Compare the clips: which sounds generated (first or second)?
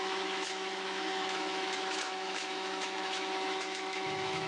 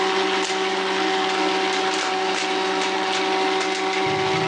first